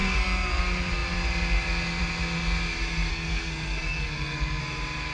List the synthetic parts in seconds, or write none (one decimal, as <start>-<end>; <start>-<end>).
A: 0.0-0.6; 3.1-4.6